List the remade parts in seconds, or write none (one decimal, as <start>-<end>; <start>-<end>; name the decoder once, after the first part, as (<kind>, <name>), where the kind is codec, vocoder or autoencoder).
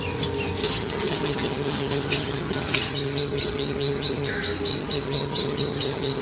0.6-4.3 (vocoder, HiFi-GAN); 4.7-6.2